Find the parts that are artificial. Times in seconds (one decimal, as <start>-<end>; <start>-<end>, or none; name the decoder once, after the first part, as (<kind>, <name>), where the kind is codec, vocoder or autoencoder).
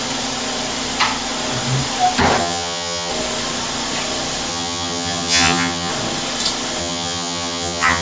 2.4-3.1 (vocoder, HiFi-GAN); 4.5-5.9; 6.8-8.0